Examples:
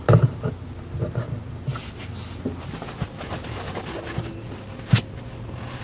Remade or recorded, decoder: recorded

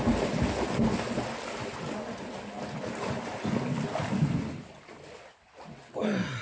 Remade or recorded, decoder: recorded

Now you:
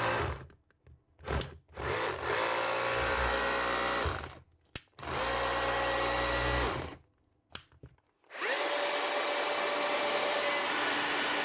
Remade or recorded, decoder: recorded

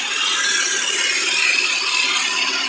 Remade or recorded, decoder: recorded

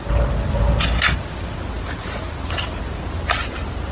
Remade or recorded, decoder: recorded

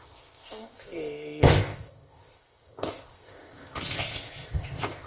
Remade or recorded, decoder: remade, codec, ZipCodec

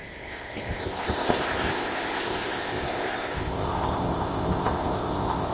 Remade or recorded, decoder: remade, codec, ZipCodec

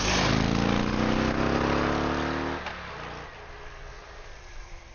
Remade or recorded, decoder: recorded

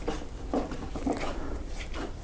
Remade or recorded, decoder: recorded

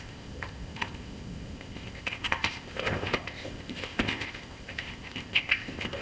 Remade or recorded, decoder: remade, codec, ZipCodec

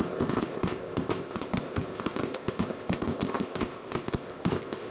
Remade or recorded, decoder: remade, codec, ZipCodec